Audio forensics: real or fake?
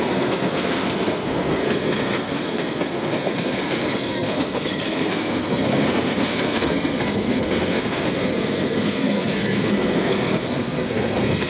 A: fake